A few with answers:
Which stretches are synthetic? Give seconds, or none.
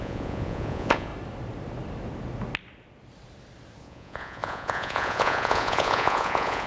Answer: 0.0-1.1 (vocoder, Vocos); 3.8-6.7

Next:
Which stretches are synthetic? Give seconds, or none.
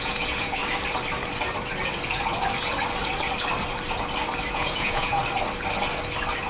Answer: 0.0-0.6 (vocoder, Vocos); 4.5-5.2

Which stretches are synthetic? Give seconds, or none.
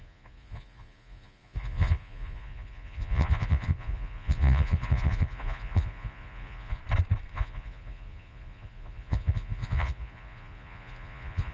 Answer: 0.0-6.8 (vocoder, Vocos); 7.3-11.5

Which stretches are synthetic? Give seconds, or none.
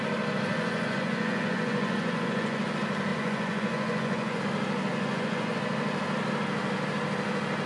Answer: 0.5-2.6 (vocoder, Vocos); 3.1-4.4; 4.9-5.6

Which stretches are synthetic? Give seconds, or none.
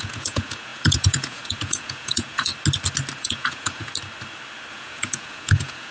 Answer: 0.0-2.5 (vocoder, Vocos); 3.2-3.9; 4.7-5.9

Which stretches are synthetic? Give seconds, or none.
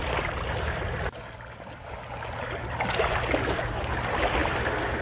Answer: none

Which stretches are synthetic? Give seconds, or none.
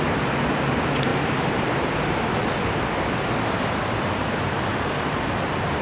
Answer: none